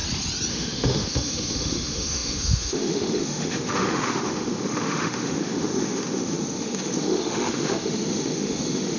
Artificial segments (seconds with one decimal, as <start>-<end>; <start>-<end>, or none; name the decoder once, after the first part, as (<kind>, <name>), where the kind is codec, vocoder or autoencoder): 0.5-9.0 (autoencoder, DAC-VAE)